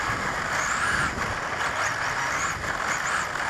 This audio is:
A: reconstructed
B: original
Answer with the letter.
B